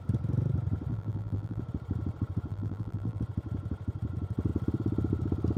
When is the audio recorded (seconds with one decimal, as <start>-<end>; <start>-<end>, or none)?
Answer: 0.0-0.9; 1.6-2.5; 3.2-5.6